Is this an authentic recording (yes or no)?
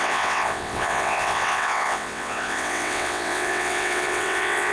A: no